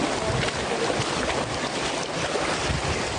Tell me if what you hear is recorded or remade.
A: recorded